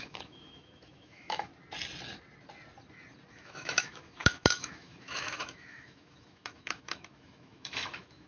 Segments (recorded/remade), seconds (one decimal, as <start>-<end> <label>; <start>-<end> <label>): 0.0-1.5 remade; 1.5-3.3 recorded; 3.3-8.3 remade